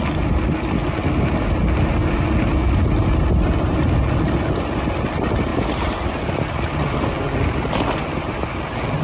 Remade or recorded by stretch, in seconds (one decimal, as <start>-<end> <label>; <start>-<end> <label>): 0.0-5.5 recorded; 5.5-6.1 remade; 6.1-9.0 recorded